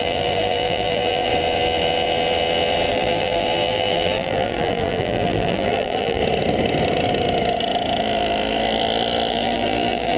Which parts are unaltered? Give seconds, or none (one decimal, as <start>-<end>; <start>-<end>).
1.3-2.9; 6.2-9.3